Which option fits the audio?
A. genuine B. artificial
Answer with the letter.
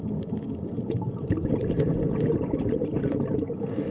A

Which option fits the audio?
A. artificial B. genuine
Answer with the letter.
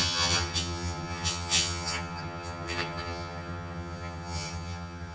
A